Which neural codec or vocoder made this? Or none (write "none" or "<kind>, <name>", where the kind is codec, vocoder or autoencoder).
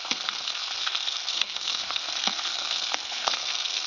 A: codec, SNAC